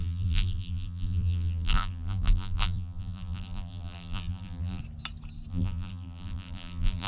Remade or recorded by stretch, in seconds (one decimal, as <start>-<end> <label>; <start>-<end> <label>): 0.0-4.8 remade; 4.8-5.5 recorded; 5.5-7.1 remade